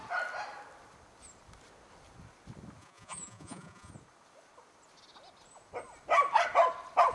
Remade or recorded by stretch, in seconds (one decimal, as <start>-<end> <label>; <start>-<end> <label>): 0.0-2.8 recorded; 2.8-3.9 remade; 3.9-7.1 recorded